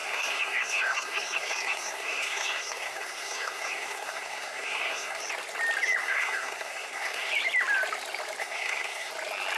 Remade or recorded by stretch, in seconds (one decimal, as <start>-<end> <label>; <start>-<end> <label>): 0.0-5.2 remade; 5.2-6.0 recorded; 6.0-7.3 remade; 7.3-8.4 recorded; 8.4-9.1 remade; 9.1-9.6 recorded